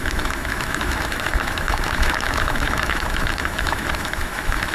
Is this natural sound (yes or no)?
no